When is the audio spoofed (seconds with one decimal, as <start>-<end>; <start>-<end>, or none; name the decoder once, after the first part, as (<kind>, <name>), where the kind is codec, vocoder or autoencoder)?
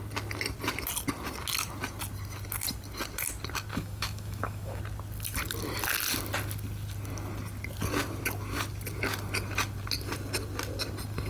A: 3.7-4.8 (autoencoder, DAC-VAE)